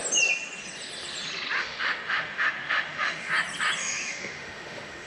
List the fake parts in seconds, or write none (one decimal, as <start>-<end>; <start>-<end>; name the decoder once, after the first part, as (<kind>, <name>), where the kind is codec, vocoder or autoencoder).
1.6-3.3 (autoencoder, DAC-VAE); 3.8-5.1